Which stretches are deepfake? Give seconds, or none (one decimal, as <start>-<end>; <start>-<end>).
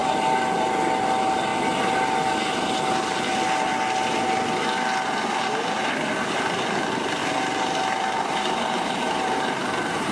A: 0.0-0.7; 7.2-10.1